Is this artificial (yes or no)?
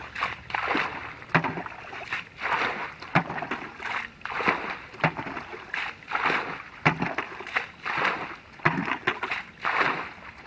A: yes